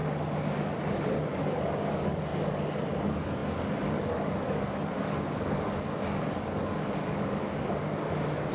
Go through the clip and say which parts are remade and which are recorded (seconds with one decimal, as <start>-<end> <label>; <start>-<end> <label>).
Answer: 0.0-8.5 remade